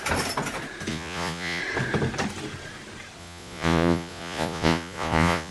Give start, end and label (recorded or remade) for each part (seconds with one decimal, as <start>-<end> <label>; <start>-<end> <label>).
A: 0.0-0.9 recorded; 0.9-1.6 remade; 1.6-3.2 recorded; 3.2-5.5 remade